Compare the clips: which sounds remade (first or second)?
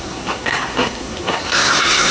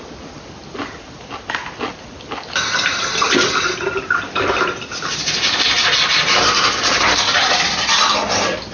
first